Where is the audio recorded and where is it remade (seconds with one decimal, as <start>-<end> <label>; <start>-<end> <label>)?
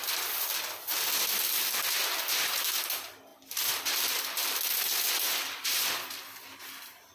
0.0-0.5 recorded; 0.5-7.1 remade